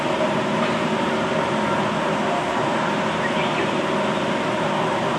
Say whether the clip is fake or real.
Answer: fake